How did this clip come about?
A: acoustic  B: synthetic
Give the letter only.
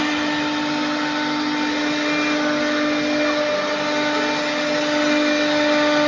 A